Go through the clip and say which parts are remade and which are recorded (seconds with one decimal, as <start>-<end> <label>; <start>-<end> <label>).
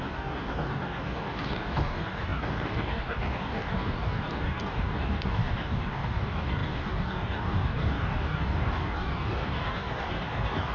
0.0-10.7 remade